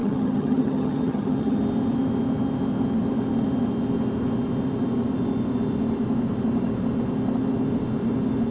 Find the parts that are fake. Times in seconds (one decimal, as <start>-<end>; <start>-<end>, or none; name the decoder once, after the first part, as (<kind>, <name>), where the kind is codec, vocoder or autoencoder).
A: 0.0-1.6 (vocoder, HiFi-GAN)